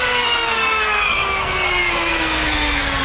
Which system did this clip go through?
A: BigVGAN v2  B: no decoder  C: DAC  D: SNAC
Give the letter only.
D